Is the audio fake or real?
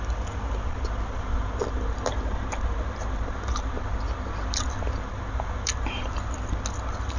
real